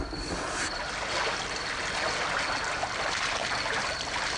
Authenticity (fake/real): real